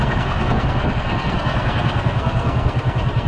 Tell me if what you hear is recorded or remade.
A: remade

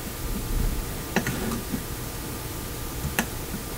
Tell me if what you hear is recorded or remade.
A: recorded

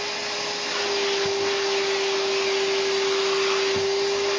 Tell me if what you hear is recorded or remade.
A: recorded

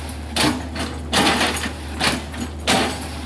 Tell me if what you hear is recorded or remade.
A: recorded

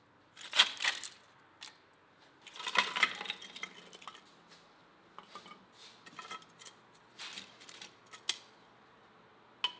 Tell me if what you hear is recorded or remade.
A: recorded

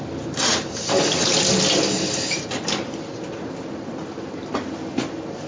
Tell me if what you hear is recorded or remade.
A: recorded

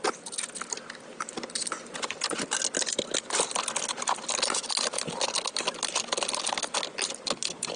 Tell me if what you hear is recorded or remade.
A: recorded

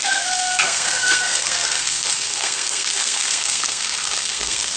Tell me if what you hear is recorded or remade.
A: remade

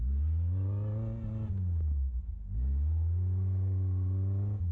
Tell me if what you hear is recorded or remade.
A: recorded